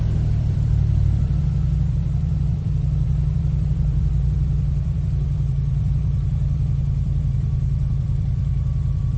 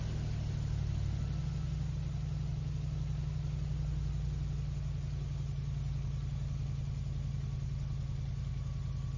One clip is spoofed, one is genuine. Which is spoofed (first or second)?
first